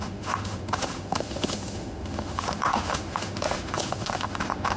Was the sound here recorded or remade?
remade